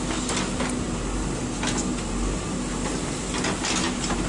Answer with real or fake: real